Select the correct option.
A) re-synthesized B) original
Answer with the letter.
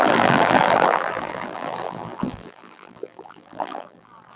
A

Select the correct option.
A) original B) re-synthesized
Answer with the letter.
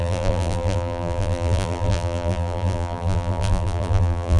B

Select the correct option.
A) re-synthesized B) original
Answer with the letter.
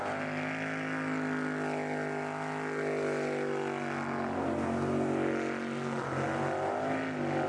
B